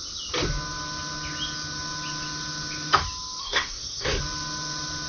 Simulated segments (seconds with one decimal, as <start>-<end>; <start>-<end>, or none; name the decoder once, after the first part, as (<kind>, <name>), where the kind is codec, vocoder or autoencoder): 3.4-4.2 (codec, SNAC)

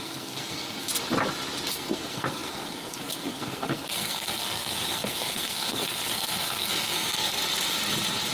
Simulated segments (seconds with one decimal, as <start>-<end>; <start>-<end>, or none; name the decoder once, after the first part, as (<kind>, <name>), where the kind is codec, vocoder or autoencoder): 0.0-0.9 (codec, SNAC); 1.7-7.4

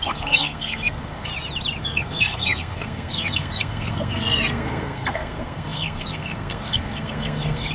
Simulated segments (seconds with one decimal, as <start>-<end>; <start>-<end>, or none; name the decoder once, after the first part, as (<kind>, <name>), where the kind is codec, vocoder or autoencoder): 0.0-1.3 (codec, SNAC); 1.8-7.7

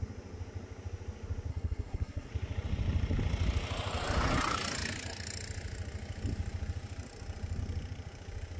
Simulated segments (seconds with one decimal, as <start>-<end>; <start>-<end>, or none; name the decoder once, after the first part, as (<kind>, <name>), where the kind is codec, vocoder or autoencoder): 1.5-2.3 (codec, SNAC)